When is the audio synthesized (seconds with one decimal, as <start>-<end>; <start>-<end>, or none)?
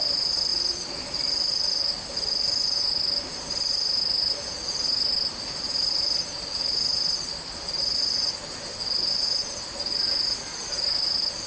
none